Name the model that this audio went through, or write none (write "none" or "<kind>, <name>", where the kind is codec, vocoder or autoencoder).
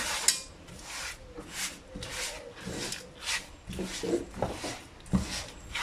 none